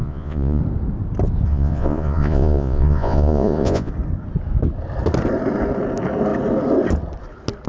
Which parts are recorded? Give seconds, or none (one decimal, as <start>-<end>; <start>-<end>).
0.6-1.5; 3.9-7.7